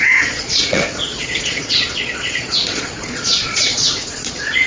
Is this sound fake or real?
fake